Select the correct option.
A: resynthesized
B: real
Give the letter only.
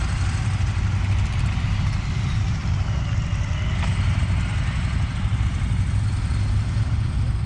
B